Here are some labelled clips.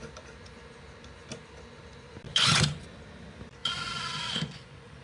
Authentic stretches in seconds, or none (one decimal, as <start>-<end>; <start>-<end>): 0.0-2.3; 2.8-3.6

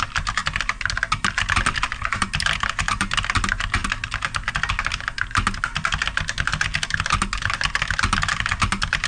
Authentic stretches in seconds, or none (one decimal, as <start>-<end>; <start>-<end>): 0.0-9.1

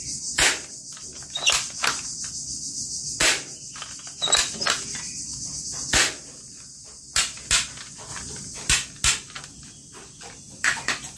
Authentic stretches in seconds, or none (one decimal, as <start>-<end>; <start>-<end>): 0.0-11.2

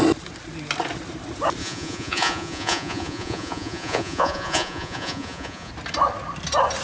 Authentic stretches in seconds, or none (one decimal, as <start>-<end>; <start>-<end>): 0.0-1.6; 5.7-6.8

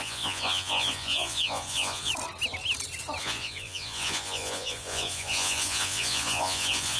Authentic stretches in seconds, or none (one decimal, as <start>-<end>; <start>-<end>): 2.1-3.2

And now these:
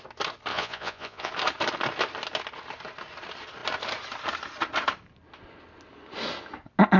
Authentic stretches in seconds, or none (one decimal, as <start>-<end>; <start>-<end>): 0.0-0.5; 1.3-7.0

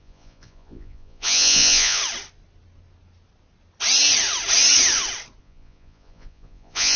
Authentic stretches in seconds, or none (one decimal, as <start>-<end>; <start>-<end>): 2.0-5.4